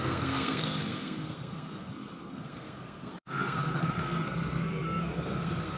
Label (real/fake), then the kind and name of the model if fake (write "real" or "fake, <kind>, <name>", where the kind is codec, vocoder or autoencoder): fake, codec, SNAC